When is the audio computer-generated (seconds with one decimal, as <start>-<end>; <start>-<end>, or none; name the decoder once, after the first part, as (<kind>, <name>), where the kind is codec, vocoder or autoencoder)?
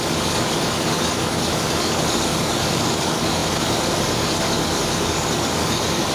0.0-6.1 (codec, DAC)